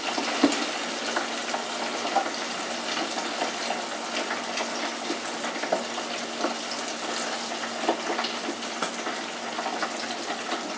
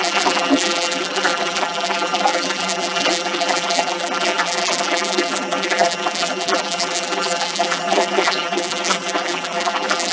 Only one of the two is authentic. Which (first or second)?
first